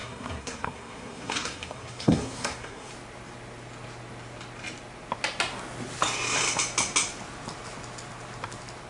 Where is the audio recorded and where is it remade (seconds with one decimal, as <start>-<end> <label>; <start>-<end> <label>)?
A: 0.0-2.9 remade; 2.9-8.9 recorded